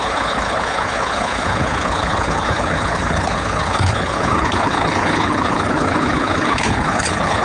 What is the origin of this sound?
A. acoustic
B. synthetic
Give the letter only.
B